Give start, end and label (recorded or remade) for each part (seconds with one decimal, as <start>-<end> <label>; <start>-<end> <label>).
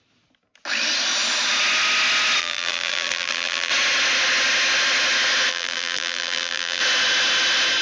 0.0-2.4 recorded; 2.4-3.7 remade; 3.7-5.5 recorded; 5.5-6.8 remade; 6.8-7.8 recorded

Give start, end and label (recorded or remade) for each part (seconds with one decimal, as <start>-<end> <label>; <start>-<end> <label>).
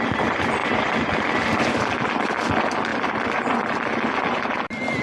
0.0-5.0 recorded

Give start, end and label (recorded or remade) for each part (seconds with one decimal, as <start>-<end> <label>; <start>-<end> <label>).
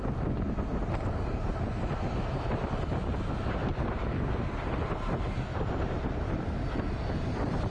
0.0-3.6 recorded; 3.6-4.8 remade; 4.8-5.5 recorded; 5.5-6.1 remade; 6.1-7.7 recorded